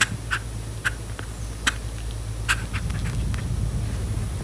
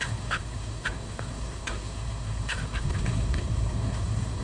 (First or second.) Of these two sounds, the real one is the first